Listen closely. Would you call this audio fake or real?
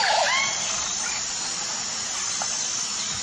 real